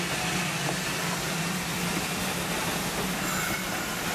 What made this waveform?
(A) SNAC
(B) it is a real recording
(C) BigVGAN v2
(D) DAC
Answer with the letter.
B